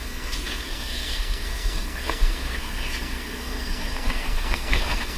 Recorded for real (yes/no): no